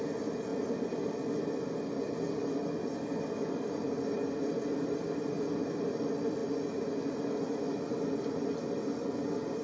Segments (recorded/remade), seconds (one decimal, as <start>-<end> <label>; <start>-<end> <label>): 0.0-9.6 recorded